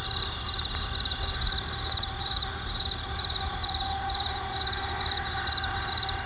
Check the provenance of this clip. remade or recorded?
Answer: recorded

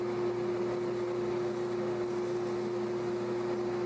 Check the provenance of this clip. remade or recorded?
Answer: recorded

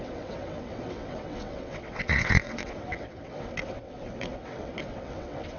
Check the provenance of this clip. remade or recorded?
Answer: remade